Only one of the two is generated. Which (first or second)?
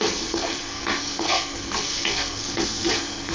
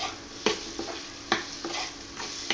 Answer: first